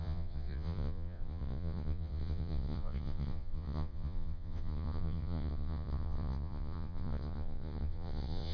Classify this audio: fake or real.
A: fake